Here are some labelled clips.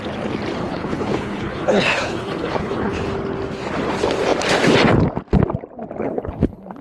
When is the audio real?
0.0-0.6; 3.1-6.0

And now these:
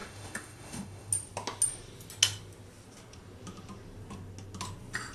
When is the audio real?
1.1-5.1

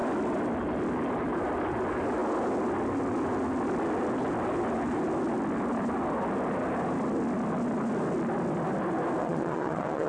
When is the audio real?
0.0-9.2